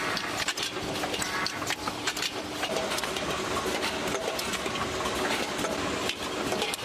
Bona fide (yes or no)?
yes